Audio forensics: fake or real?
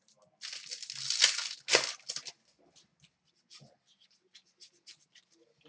real